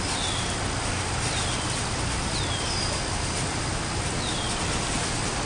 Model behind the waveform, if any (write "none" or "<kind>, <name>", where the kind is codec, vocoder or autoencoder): none